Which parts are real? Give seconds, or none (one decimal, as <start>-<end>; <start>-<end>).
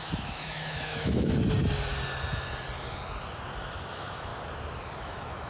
1.3-3.9; 4.3-5.0